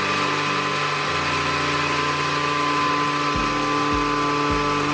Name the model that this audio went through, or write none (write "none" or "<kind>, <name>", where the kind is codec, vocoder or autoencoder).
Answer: none